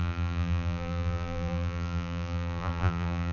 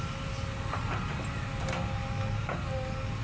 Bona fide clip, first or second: second